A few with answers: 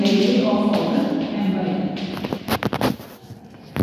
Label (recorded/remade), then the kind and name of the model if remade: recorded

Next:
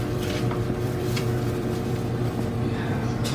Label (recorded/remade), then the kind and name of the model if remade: remade, vocoder, BigVGAN v2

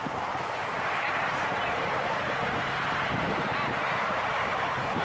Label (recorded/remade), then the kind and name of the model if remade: remade, vocoder, BigVGAN v2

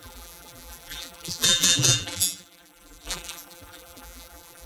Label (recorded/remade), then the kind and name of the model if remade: remade, vocoder, BigVGAN v2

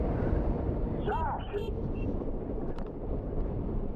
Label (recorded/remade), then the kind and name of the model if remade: remade, vocoder, BigVGAN v2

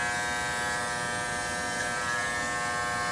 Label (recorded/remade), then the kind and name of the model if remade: recorded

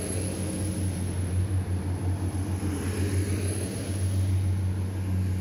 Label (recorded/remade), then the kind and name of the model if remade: recorded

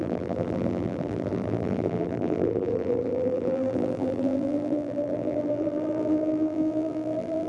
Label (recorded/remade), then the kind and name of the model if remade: remade, vocoder, BigVGAN v2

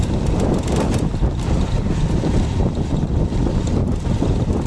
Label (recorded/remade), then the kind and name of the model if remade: recorded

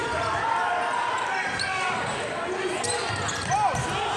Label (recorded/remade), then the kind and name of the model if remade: recorded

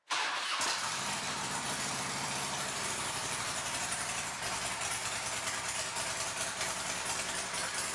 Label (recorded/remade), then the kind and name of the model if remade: remade, vocoder, BigVGAN v2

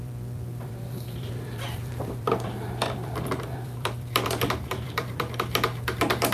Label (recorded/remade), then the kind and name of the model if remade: remade, vocoder, BigVGAN v2